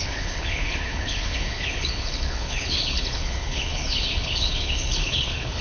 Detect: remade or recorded remade